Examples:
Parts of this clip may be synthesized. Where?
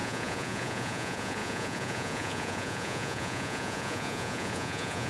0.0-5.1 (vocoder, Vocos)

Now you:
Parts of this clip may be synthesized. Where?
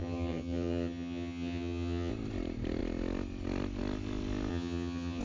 0.0-2.1 (vocoder, HiFi-GAN); 4.5-5.2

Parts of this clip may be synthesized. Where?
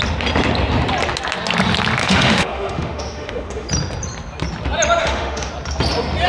2.0-3.7 (autoencoder, DAC-VAE); 5.0-5.5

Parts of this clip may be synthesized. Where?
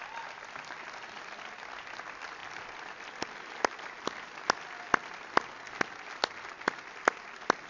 none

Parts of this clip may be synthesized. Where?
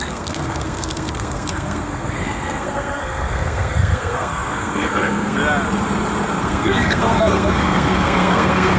0.0-5.4 (codec, SNAC); 6.4-8.8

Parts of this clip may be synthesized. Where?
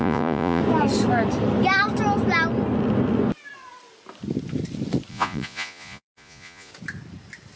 0.0-0.6 (vocoder, Vocos); 5.1-6.7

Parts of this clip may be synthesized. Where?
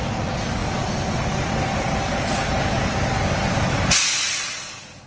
none